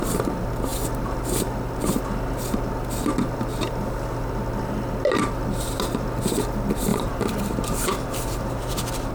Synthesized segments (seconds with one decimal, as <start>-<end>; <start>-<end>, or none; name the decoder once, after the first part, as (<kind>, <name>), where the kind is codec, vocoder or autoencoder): 6.9-8.6 (vocoder, BigVGAN v2)